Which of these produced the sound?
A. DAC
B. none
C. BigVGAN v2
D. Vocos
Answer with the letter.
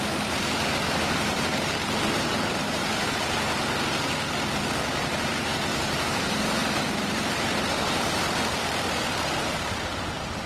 C